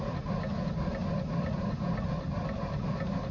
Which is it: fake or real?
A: real